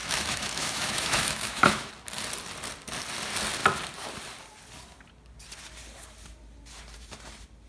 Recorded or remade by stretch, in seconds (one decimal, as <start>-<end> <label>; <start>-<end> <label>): 0.0-1.9 remade; 1.9-7.7 recorded